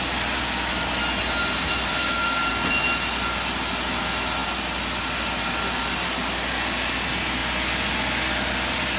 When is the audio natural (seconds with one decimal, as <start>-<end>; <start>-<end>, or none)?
0.0-2.0; 2.5-9.0